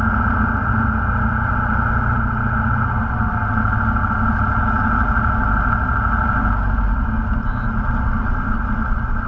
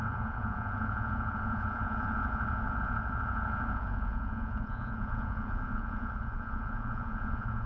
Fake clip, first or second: second